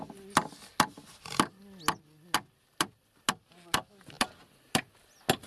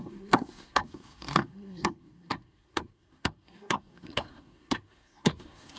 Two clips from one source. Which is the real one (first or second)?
first